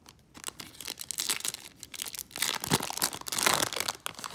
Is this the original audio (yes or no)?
yes